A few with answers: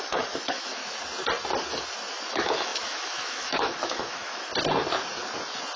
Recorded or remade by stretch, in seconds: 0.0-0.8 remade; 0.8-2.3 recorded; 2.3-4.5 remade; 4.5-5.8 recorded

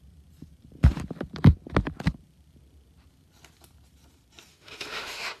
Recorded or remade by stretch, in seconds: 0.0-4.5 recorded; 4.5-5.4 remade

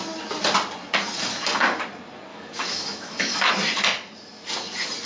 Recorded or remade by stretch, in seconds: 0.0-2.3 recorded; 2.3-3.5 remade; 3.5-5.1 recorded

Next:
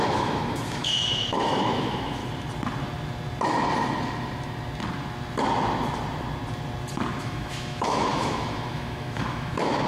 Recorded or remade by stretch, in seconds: 0.0-2.2 remade; 2.2-7.2 recorded; 7.2-9.9 remade

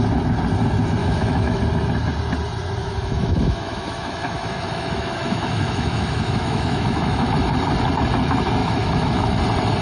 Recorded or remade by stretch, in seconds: 0.0-1.0 recorded; 1.0-1.6 remade; 1.6-2.8 recorded; 2.8-7.3 remade; 7.3-8.6 recorded; 8.6-9.4 remade; 9.4-9.8 recorded